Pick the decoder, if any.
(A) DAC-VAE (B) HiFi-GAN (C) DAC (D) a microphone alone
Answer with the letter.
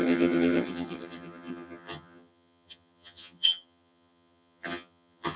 B